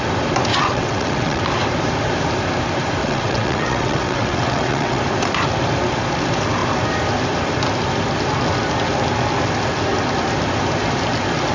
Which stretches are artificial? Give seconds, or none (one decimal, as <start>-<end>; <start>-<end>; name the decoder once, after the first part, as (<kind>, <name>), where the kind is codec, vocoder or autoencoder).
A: 0.5-1.4 (vocoder, WaveNeXt); 3.0-5.0